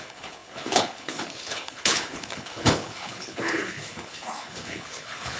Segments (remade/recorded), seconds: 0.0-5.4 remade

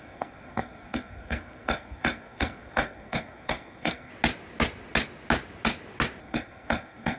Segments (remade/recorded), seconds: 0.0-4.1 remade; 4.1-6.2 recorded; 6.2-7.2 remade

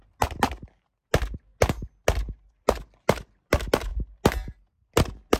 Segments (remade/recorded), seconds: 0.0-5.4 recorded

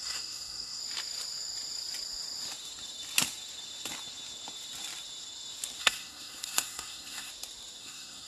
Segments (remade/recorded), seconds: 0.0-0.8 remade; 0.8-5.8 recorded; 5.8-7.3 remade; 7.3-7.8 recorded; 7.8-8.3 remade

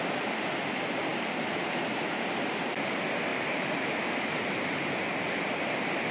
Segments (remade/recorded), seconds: 0.0-6.1 recorded

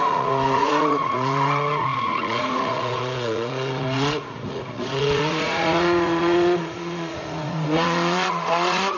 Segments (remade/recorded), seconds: 0.0-9.0 remade

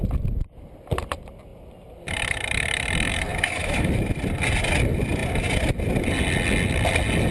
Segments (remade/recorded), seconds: 0.0-3.3 recorded; 3.3-3.9 remade; 3.9-7.3 recorded